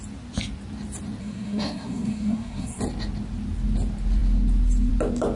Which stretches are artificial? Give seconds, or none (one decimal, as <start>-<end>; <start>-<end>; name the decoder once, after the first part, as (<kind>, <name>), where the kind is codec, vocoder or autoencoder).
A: 1.2-2.8 (codec, SNAC)